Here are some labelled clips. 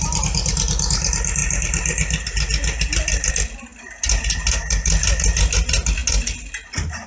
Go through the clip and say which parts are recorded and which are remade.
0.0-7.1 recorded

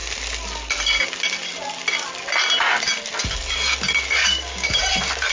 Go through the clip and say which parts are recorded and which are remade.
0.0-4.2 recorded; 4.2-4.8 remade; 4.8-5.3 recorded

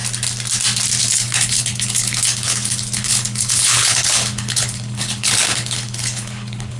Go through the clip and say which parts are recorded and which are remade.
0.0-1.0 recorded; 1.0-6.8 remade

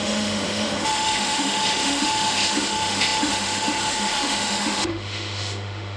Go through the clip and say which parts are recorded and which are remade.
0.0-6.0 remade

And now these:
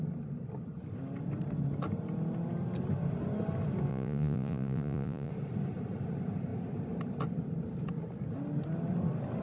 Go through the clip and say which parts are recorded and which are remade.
0.0-3.9 recorded; 3.9-5.3 remade; 5.3-9.4 recorded

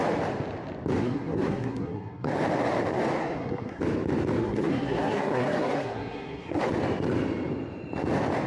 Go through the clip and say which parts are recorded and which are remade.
0.0-1.0 recorded; 1.0-2.3 remade; 2.3-3.2 recorded; 3.2-3.8 remade; 3.8-4.4 recorded; 4.4-6.7 remade; 6.7-8.5 recorded

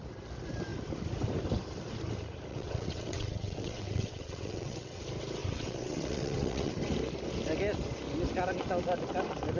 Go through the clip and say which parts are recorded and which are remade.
0.0-2.5 recorded; 2.5-5.0 remade; 5.0-5.4 recorded; 5.4-6.7 remade; 6.7-9.6 recorded

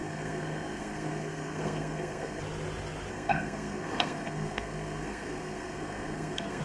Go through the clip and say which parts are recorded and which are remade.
0.0-2.4 remade; 2.4-3.1 recorded; 3.1-6.6 remade